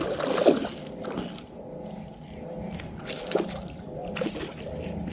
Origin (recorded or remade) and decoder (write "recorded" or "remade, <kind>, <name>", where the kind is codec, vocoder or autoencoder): recorded